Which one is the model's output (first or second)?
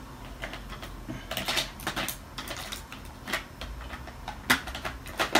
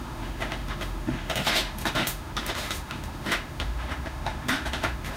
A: second